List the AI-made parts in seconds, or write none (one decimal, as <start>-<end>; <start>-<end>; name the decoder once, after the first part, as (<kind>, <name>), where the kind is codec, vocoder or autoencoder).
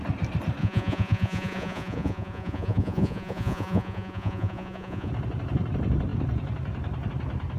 0.6-5.1 (vocoder, Vocos)